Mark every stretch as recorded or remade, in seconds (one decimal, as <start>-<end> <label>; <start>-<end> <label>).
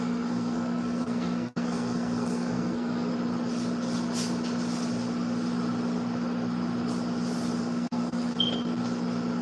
0.0-3.1 remade; 3.1-7.6 recorded; 7.6-8.3 remade; 8.3-9.4 recorded